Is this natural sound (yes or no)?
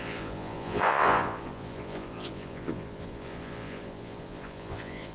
no